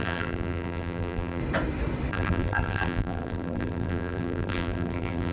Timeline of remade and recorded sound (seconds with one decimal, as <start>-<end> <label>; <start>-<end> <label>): 0.0-1.4 remade; 1.4-2.1 recorded; 2.1-5.3 remade